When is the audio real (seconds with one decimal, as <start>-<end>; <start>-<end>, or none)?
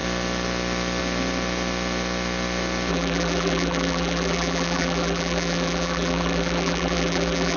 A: 0.0-2.9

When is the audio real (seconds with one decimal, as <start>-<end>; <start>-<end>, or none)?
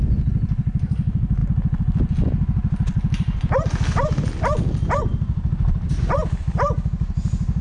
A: 0.0-7.6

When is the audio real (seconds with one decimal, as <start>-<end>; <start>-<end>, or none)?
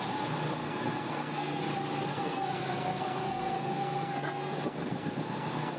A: 0.0-0.6; 1.6-2.1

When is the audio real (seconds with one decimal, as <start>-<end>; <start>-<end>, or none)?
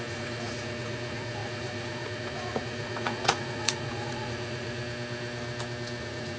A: 4.8-6.0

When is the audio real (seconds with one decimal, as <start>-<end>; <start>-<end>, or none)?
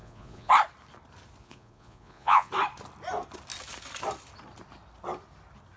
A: 0.5-1.4; 2.5-5.8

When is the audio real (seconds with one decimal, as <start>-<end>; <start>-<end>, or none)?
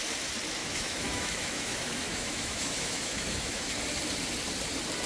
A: 0.0-0.6; 3.7-5.1